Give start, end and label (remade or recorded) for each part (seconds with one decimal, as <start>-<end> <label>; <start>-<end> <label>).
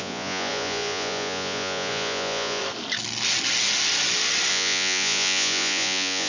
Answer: 0.0-2.6 remade; 2.6-4.5 recorded; 4.5-6.3 remade